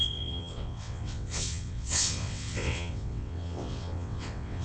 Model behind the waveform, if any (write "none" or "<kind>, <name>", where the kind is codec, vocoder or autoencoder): vocoder, WaveNeXt